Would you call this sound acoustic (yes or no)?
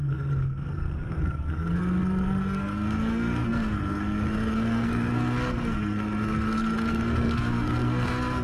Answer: no